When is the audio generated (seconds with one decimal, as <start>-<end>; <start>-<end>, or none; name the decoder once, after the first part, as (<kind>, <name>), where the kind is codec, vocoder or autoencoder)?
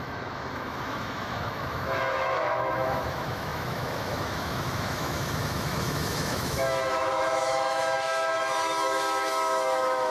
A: 0.0-10.1 (autoencoder, DAC-VAE)